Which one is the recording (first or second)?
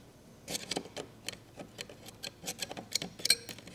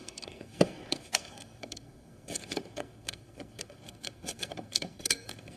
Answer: first